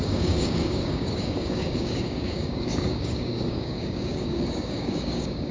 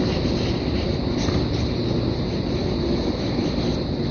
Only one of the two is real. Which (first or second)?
second